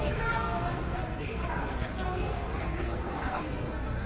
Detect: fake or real fake